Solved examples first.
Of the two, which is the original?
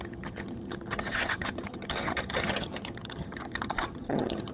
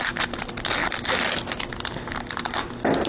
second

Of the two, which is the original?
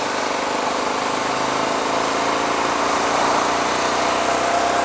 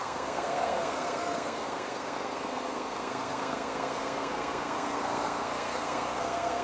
first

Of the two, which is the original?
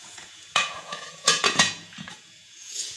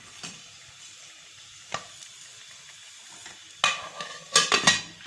second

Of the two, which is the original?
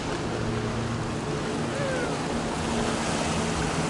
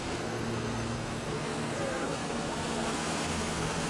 first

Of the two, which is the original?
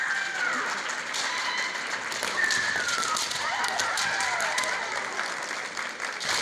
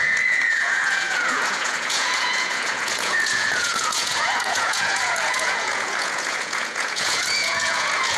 first